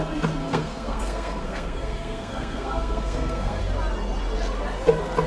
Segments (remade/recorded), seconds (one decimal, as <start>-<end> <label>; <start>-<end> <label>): 0.0-0.4 recorded; 0.4-3.6 remade; 3.6-5.3 recorded